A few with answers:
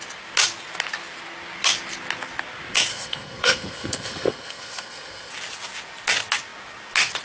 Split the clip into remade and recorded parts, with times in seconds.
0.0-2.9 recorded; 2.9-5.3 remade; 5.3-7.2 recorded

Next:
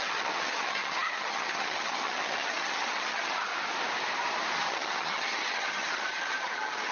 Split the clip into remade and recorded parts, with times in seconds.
0.0-3.5 remade; 3.5-4.7 recorded; 4.7-6.9 remade